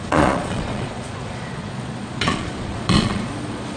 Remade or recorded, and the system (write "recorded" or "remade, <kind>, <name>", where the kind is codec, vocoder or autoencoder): remade, vocoder, Vocos